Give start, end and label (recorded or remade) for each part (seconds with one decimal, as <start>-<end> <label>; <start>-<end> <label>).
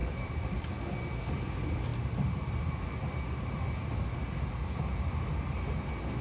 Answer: 0.0-0.7 remade; 0.7-1.9 recorded; 1.9-2.7 remade; 2.7-6.2 recorded